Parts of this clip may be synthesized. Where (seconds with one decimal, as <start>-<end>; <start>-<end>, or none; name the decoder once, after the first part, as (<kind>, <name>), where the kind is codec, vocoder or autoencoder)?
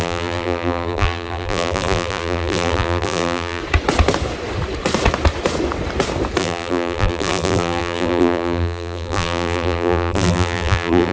0.0-3.6 (vocoder, BigVGAN v2); 6.4-11.1